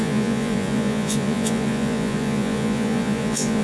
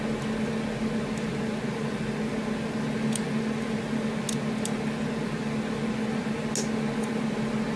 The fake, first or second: first